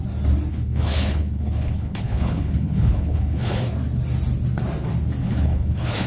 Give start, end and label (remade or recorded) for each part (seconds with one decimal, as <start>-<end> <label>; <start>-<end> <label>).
0.0-0.5 recorded; 0.5-3.6 remade; 3.6-5.2 recorded; 5.2-6.1 remade

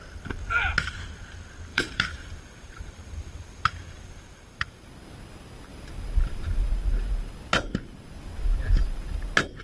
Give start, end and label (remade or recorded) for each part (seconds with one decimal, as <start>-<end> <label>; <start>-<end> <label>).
0.0-1.7 recorded; 1.7-4.9 remade; 4.9-5.7 recorded; 5.7-6.7 remade; 6.7-9.6 recorded

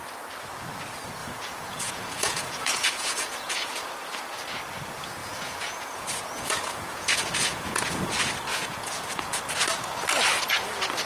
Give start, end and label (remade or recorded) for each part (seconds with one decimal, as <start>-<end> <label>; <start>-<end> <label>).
0.0-1.2 recorded; 1.2-3.9 remade; 3.9-5.2 recorded; 5.2-8.1 remade; 8.1-8.5 recorded; 8.5-9.4 remade; 9.4-11.1 recorded

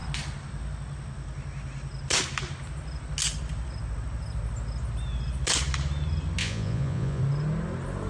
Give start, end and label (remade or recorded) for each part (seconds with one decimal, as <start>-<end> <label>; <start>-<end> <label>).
0.0-6.4 recorded; 6.4-7.2 remade; 7.2-8.1 recorded

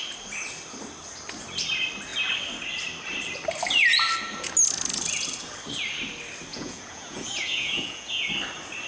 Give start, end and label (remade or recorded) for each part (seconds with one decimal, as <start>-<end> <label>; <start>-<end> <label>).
0.0-6.5 recorded; 6.5-8.3 remade; 8.3-8.9 recorded

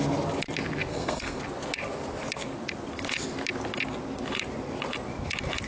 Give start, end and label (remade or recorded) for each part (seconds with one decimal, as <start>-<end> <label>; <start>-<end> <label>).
0.0-0.9 recorded; 0.9-1.4 remade; 1.4-5.7 recorded

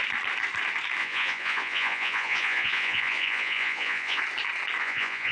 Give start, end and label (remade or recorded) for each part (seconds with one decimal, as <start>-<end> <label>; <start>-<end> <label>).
0.0-1.0 recorded; 1.0-4.2 remade; 4.2-4.8 recorded; 4.8-5.3 remade

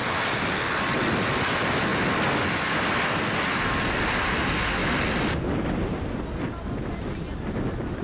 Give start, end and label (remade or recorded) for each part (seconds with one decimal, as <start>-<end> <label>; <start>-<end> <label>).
0.0-8.0 recorded